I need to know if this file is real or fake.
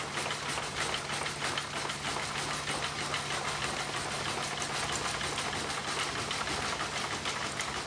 real